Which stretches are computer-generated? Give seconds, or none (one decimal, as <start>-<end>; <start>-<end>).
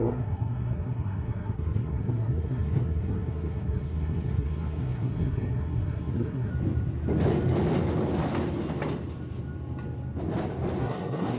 0.0-6.5; 10.8-11.4